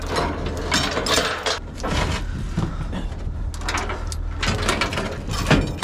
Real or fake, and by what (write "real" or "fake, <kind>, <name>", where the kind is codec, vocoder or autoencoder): real